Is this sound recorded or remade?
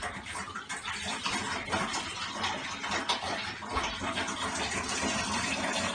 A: recorded